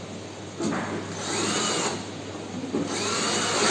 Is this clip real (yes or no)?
yes